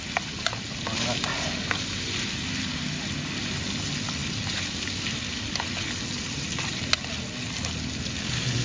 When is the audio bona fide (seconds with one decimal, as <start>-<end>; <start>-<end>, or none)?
0.0-8.6